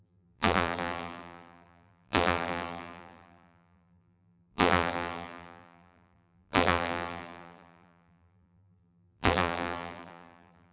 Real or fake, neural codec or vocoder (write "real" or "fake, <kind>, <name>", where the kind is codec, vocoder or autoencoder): fake, vocoder, BigVGAN v2